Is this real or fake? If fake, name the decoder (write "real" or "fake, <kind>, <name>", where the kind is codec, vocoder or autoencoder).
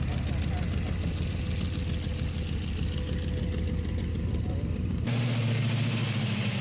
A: real